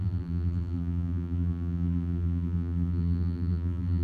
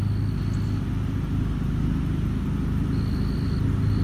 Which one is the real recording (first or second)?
second